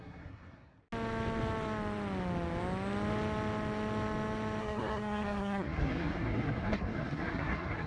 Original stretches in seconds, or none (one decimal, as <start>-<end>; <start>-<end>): 0.8-4.6